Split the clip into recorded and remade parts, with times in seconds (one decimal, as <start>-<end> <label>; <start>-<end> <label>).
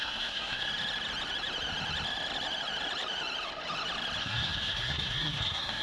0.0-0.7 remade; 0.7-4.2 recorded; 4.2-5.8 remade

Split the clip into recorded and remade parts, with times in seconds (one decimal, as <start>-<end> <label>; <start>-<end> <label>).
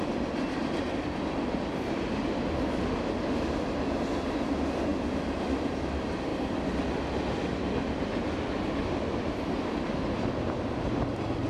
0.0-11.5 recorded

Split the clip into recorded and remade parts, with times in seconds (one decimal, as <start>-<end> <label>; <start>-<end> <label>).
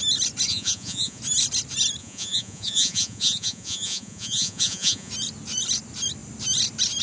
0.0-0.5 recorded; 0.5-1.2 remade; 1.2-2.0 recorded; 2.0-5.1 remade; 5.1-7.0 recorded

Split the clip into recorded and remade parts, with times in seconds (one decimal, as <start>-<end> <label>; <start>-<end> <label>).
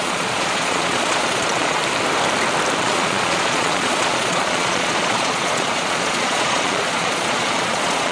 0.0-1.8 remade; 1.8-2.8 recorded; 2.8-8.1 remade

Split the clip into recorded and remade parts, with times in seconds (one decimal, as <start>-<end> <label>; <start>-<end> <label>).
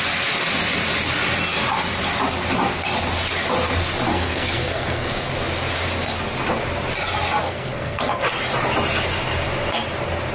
0.0-4.1 recorded; 4.1-5.3 remade; 5.3-7.4 recorded; 7.4-8.2 remade; 8.2-10.3 recorded